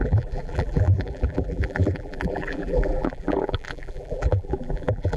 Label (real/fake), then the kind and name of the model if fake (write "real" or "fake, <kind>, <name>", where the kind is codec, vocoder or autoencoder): fake, vocoder, BigVGAN v2